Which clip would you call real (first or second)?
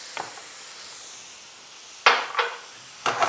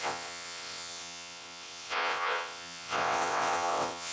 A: first